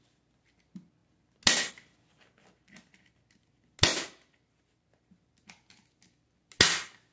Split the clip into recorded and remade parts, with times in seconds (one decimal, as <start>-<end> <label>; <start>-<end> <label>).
0.0-7.1 recorded